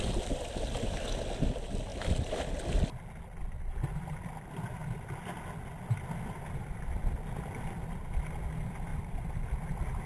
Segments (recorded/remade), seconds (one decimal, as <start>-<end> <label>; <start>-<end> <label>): 0.0-1.9 recorded; 1.9-2.5 remade; 2.5-8.9 recorded; 8.9-9.4 remade; 9.4-10.1 recorded